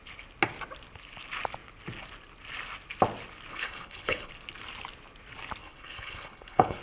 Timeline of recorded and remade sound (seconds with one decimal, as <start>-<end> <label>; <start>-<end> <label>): 0.0-3.5 recorded; 3.5-4.3 remade; 4.3-5.6 recorded; 5.6-6.8 remade